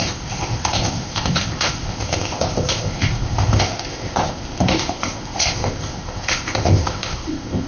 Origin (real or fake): fake